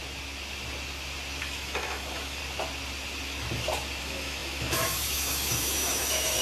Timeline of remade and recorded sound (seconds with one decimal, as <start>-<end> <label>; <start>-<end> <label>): 0.0-1.4 recorded; 1.4-2.4 remade; 2.4-4.0 recorded; 4.0-6.4 remade